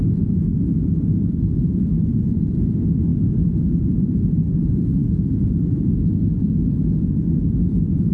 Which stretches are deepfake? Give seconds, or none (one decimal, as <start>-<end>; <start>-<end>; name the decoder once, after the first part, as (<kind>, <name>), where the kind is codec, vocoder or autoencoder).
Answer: 1.3-8.1 (vocoder, BigVGAN v2)